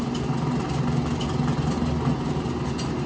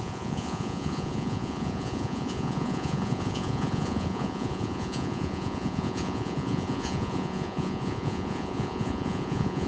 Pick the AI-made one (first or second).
second